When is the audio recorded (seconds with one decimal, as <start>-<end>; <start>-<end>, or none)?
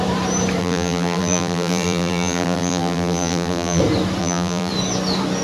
0.0-0.6; 3.8-4.2; 4.7-5.4